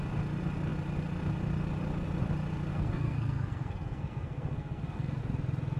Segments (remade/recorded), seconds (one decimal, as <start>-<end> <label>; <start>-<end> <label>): 0.0-2.7 recorded; 2.7-5.2 remade; 5.2-5.8 recorded